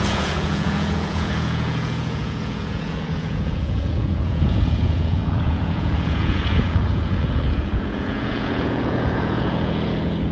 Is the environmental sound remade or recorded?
remade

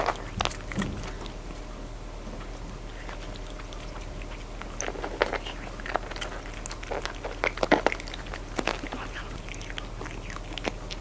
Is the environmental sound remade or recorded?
recorded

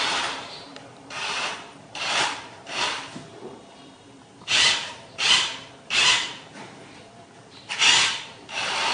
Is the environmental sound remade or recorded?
remade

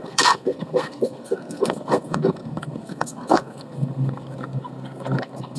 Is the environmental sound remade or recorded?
remade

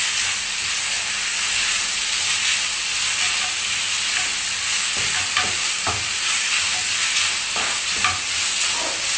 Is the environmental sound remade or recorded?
recorded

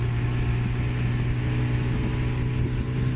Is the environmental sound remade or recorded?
recorded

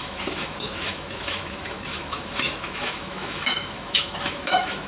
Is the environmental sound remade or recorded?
remade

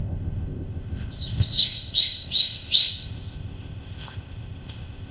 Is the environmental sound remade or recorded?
remade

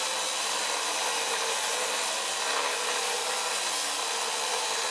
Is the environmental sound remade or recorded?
recorded